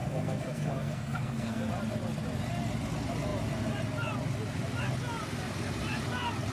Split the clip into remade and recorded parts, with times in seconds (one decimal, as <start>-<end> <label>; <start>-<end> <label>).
0.0-1.7 remade; 1.7-6.5 recorded